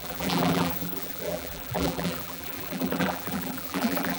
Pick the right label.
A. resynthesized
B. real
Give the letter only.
A